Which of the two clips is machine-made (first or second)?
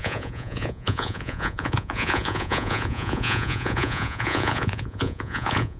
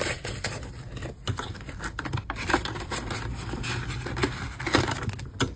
first